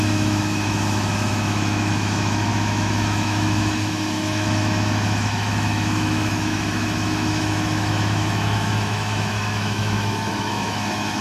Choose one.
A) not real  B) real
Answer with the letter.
A